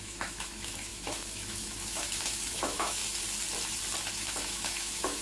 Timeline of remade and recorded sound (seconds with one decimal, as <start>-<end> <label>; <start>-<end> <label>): 0.0-3.0 remade; 3.0-4.1 recorded; 4.1-5.2 remade